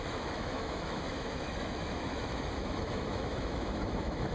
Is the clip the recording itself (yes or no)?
no